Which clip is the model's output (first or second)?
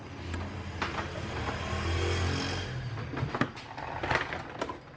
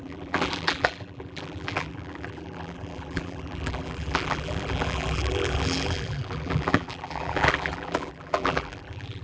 second